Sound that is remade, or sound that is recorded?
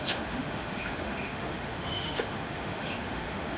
remade